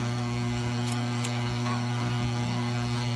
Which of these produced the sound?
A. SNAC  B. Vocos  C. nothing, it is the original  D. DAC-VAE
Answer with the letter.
A